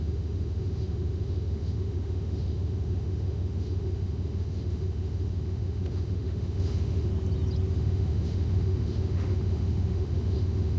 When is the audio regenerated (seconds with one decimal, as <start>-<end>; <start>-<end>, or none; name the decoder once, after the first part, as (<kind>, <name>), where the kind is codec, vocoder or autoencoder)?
0.0-7.1 (autoencoder, DAC-VAE); 7.7-10.8